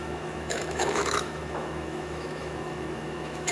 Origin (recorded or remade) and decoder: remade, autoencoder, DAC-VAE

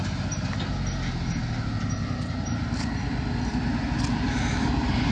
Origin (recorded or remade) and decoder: recorded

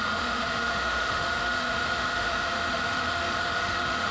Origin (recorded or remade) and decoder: remade, autoencoder, DAC-VAE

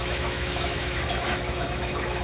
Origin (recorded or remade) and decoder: remade, autoencoder, DAC-VAE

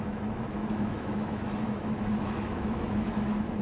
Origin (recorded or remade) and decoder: remade, autoencoder, DAC-VAE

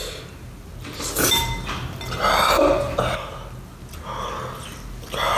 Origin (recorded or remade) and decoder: recorded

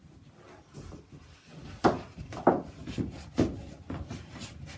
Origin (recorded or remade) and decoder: recorded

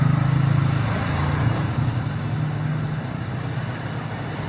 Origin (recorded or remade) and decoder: recorded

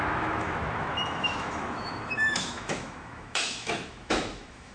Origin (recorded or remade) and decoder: remade, autoencoder, DAC-VAE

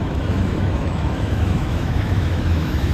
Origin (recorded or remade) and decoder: remade, autoencoder, DAC-VAE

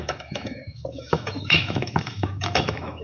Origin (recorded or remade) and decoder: remade, autoencoder, DAC-VAE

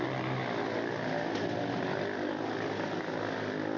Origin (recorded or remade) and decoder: recorded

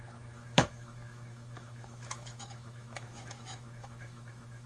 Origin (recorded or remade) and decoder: remade, autoencoder, DAC-VAE